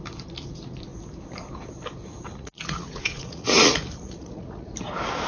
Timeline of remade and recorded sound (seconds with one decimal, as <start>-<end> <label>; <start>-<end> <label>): 0.0-2.3 recorded; 2.3-4.7 remade; 4.7-5.3 recorded